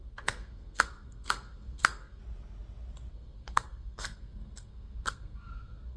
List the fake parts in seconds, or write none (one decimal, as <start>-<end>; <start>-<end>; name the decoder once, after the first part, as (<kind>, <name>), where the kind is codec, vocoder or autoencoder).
0.0-2.2 (codec, SNAC); 3.1-6.0